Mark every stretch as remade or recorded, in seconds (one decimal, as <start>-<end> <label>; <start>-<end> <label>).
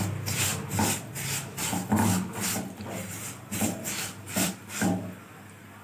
0.0-0.5 remade; 0.5-3.2 recorded; 3.2-5.8 remade